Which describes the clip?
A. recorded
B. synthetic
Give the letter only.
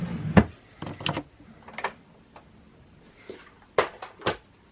A